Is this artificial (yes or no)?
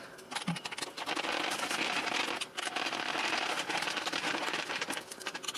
no